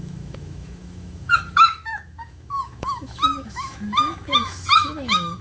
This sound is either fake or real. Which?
fake